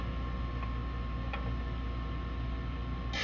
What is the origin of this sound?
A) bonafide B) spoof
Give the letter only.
A